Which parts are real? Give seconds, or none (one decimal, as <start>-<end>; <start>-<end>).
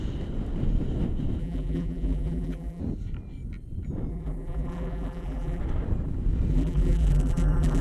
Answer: 0.0-1.4; 2.8-4.1; 5.6-6.5